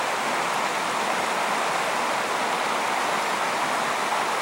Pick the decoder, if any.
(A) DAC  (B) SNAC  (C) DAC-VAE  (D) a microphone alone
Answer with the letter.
D